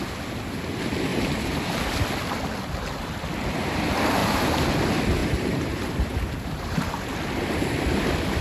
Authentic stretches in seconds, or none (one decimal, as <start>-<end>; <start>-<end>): 0.0-1.1; 2.0-4.2; 4.7-5.2; 6.9-8.4